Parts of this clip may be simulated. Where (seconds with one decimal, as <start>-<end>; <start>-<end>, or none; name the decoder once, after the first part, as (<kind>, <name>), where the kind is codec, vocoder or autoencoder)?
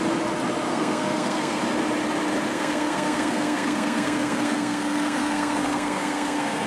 0.7-1.6 (codec, SNAC); 2.5-6.7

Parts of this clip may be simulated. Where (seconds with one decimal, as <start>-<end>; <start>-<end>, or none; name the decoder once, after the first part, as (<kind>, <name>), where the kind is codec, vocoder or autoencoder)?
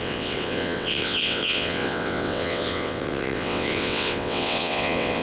0.0-5.2 (vocoder, WaveNeXt)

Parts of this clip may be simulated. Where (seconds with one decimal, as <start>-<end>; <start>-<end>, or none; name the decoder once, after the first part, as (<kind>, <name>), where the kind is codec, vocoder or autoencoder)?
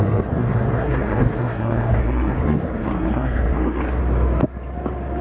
0.0-4.0 (codec, SNAC)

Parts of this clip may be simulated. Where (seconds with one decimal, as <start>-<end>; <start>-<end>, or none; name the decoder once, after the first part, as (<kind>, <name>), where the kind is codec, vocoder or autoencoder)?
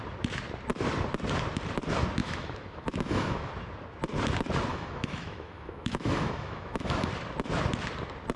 2.2-3.5 (autoencoder, DAC-VAE); 4.7-7.1